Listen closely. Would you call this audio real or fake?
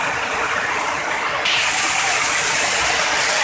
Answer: real